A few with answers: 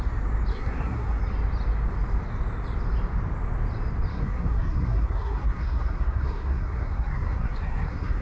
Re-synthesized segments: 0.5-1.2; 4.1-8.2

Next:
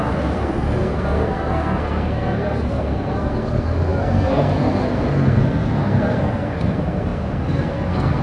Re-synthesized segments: 0.0-8.2

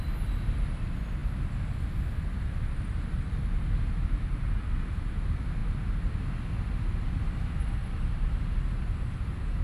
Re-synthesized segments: none